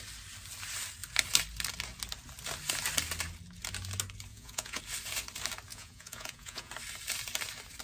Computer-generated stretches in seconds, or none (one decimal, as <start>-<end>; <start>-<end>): 4.3-4.8; 5.7-6.7